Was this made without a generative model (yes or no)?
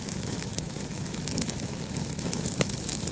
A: no